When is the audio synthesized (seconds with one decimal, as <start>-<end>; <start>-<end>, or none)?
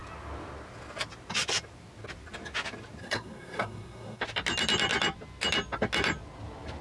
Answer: 3.0-4.2